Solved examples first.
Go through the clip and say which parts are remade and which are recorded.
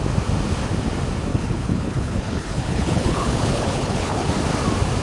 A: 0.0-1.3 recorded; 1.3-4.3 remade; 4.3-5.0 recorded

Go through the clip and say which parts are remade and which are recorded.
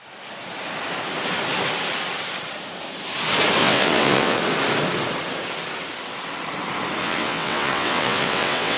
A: 0.0-3.6 recorded; 3.6-4.4 remade; 4.4-7.0 recorded; 7.0-8.8 remade